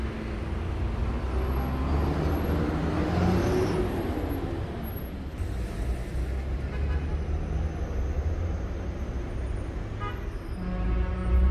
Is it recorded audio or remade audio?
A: recorded